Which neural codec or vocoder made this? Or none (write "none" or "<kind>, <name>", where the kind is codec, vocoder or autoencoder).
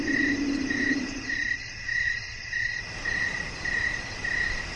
none